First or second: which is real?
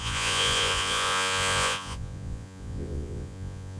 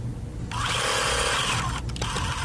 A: second